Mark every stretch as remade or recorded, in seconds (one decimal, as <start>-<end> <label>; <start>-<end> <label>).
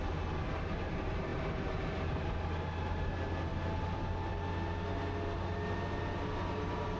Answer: 0.0-7.0 recorded